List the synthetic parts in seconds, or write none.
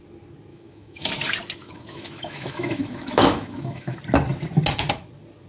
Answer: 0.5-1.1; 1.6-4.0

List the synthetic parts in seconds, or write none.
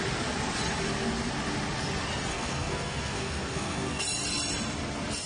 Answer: 2.3-4.0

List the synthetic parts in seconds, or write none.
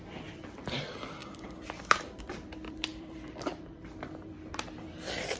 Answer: 0.0-5.4